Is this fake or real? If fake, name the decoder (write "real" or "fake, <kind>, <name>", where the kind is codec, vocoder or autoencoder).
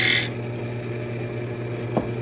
real